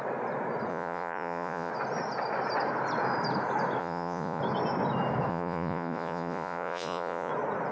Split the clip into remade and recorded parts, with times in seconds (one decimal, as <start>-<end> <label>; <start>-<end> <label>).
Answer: 0.0-0.7 recorded; 0.7-1.7 remade; 1.7-3.8 recorded; 3.8-4.4 remade; 4.4-5.3 recorded; 5.3-7.3 remade; 7.3-7.7 recorded